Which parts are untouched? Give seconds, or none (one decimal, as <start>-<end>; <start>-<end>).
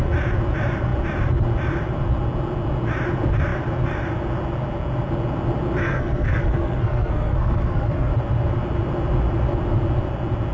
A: 0.0-5.8; 8.1-10.5